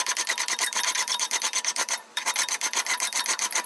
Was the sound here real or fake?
fake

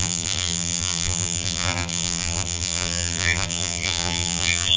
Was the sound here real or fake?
fake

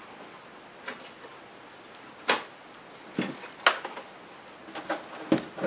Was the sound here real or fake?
real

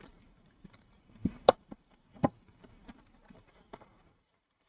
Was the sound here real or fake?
fake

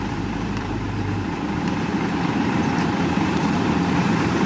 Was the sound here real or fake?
fake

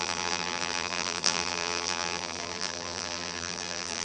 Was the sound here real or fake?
fake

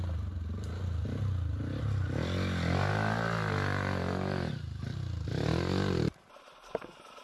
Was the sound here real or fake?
real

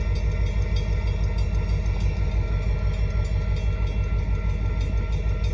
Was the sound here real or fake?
real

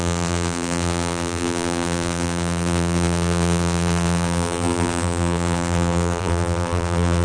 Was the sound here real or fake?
fake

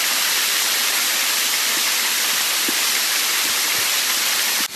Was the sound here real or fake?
real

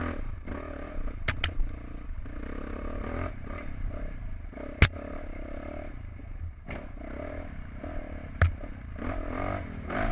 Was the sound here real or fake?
real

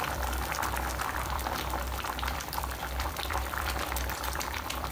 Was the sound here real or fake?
fake